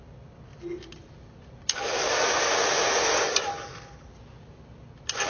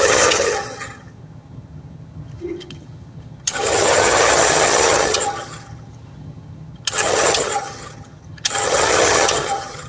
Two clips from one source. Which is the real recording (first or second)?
first